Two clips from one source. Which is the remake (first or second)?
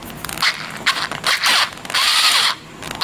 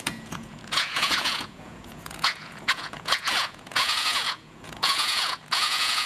second